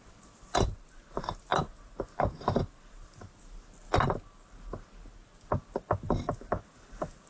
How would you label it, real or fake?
real